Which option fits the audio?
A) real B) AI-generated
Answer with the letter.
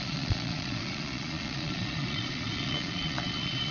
B